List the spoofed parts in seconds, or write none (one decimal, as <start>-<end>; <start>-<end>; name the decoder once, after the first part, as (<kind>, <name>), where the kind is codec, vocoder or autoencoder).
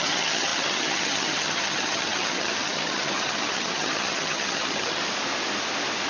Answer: 0.0-5.0 (vocoder, HiFi-GAN)